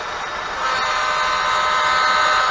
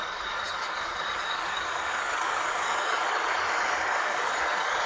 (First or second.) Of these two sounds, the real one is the first